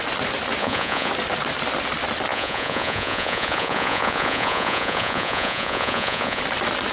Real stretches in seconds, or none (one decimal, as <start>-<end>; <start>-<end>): 0.0-0.6; 1.1-2.3; 6.4-6.9